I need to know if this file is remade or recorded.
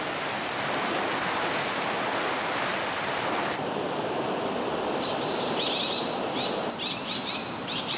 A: recorded